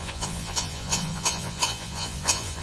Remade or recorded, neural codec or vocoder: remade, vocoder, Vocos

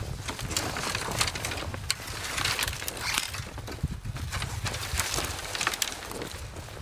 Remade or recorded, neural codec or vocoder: recorded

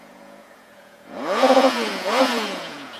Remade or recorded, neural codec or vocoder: remade, vocoder, Vocos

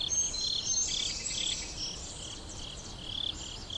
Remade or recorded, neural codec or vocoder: recorded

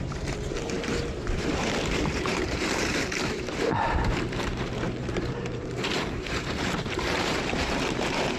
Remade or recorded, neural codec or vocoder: remade, vocoder, BigVGAN v2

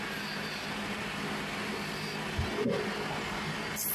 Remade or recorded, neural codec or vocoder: recorded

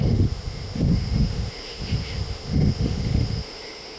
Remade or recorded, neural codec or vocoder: remade, autoencoder, DAC-VAE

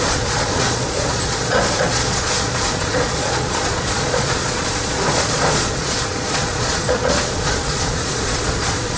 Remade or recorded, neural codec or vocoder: remade, vocoder, Vocos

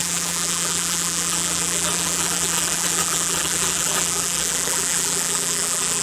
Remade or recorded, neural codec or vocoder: remade, vocoder, BigVGAN v2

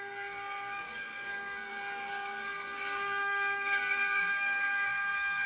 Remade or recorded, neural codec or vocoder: remade, codec, SNAC